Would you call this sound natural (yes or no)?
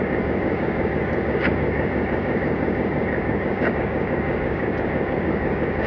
no